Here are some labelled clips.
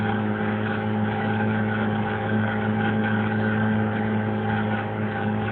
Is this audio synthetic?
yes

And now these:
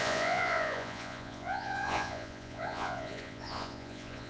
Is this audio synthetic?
yes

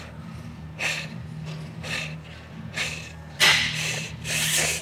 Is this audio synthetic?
no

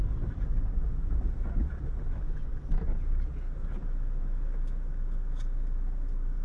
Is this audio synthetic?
no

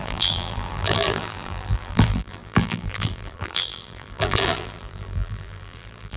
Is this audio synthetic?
yes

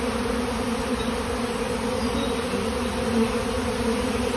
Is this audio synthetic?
yes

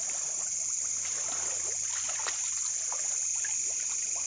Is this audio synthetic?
no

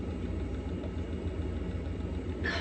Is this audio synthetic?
no